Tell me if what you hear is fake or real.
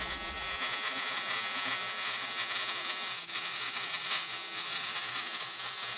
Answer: fake